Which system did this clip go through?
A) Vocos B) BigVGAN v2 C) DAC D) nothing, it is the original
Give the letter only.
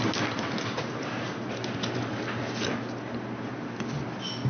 D